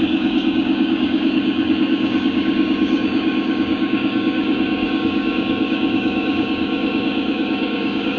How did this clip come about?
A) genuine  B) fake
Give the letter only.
B